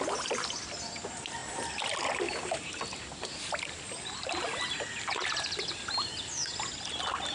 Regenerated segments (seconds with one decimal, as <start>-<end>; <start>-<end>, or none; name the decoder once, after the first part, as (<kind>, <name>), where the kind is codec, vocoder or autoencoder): none

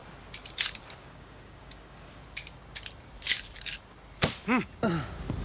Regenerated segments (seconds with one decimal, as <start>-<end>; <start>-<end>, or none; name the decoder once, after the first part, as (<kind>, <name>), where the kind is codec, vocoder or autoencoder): 1.0-2.2 (codec, DAC)